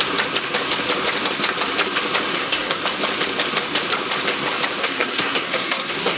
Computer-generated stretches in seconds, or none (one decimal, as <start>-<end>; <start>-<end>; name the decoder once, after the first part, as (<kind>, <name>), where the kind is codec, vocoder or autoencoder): 2.3-2.8 (codec, SNAC); 4.8-6.2